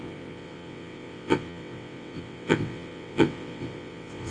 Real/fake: fake